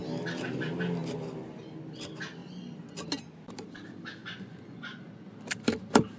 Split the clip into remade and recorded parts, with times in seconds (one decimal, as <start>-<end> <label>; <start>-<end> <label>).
0.0-4.2 recorded; 4.2-5.0 remade; 5.0-6.2 recorded